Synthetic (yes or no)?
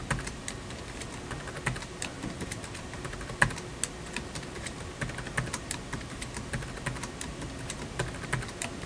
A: no